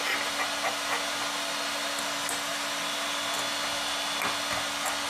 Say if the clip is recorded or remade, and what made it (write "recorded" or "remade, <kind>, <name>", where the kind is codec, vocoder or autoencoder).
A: recorded